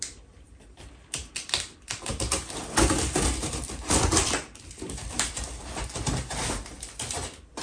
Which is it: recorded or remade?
remade